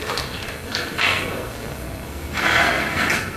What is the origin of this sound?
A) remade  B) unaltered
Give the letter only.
A